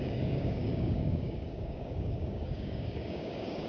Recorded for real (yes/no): no